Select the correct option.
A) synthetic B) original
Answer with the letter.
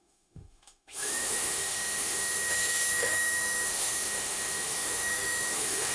A